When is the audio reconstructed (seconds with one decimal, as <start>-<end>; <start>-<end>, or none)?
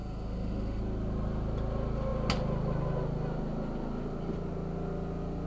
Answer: 0.0-0.8